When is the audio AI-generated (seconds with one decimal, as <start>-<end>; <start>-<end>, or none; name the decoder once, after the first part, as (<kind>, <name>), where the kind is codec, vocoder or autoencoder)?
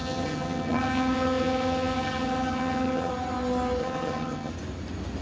0.0-3.1 (vocoder, HiFi-GAN); 3.8-4.5